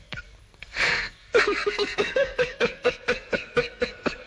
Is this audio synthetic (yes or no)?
yes